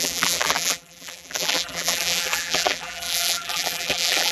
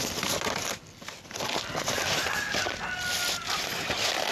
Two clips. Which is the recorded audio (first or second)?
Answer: second